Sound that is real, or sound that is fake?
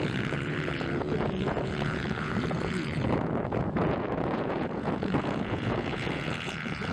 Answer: fake